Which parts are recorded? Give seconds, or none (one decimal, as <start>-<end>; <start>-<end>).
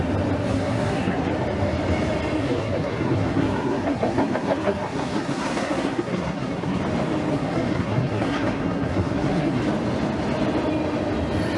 0.0-0.5; 1.3-2.4; 6.8-7.3; 9.6-11.6